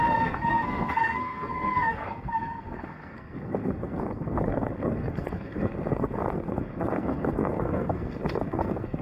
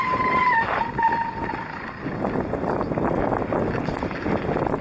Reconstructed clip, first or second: first